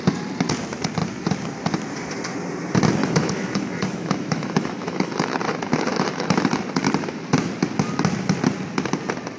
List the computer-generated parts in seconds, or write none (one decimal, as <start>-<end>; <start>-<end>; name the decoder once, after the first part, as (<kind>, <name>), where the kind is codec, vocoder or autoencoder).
3.0-5.4 (autoencoder, DAC-VAE); 5.9-6.6